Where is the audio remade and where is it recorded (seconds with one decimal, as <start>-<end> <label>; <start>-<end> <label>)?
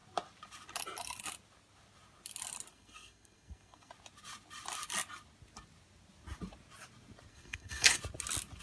0.0-2.7 recorded; 2.7-3.9 remade; 3.9-7.3 recorded; 7.3-8.0 remade; 8.0-8.6 recorded